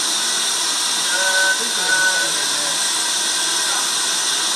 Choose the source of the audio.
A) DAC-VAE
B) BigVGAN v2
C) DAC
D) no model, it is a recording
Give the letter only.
D